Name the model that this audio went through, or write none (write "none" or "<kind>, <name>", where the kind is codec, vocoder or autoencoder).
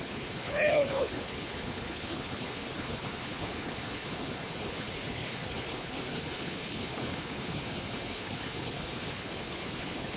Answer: codec, HILCodec